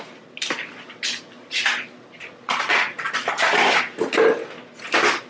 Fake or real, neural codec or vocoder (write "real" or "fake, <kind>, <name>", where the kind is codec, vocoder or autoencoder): real